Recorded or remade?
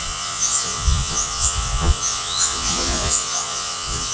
remade